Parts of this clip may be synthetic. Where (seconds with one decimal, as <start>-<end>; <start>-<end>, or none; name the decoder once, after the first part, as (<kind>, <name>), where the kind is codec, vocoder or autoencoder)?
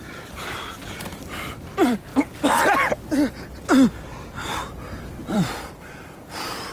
0.0-2.1 (vocoder, BigVGAN v2); 3.9-6.7